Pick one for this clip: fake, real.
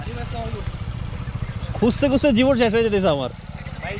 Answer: real